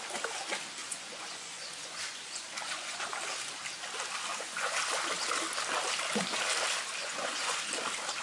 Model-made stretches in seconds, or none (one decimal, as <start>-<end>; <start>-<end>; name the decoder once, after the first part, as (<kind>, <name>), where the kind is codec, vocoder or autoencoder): 0.8-3.1 (vocoder, Vocos); 4.3-4.8; 7.0-7.7